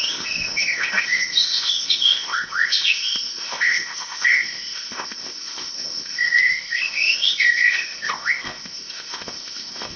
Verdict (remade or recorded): remade